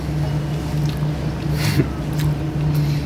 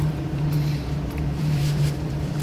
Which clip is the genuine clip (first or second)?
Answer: first